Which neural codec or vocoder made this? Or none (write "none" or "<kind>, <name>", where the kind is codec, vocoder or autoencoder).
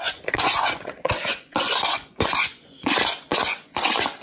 vocoder, Vocos